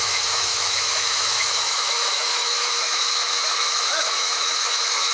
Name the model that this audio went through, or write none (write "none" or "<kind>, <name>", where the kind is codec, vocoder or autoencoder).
autoencoder, DAC-VAE